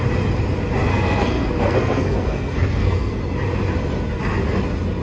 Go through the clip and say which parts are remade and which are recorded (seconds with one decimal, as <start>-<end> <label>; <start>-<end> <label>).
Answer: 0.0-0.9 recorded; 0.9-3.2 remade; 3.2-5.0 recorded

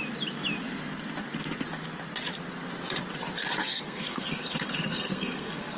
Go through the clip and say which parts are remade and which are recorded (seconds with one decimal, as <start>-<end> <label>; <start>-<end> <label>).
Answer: 0.0-3.7 recorded; 3.7-5.8 remade

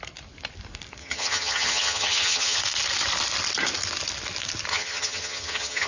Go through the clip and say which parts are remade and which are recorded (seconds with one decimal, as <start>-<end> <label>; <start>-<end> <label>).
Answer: 0.0-1.0 recorded; 1.0-2.6 remade; 2.6-4.7 recorded; 4.7-5.9 remade

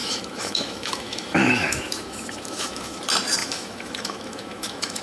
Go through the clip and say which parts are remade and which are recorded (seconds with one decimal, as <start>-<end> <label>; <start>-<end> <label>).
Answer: 0.0-3.0 remade; 3.0-3.4 recorded; 3.4-5.0 remade